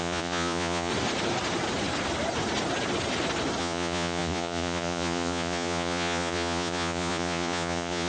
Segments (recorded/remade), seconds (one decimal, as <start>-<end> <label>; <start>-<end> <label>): 0.0-0.9 remade; 0.9-3.6 recorded; 3.6-8.1 remade